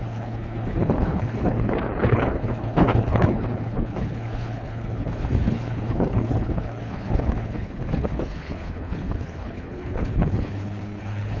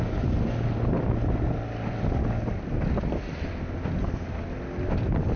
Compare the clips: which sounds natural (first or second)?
second